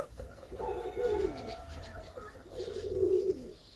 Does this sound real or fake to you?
fake